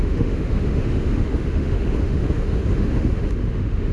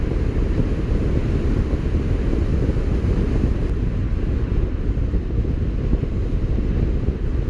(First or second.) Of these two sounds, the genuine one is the second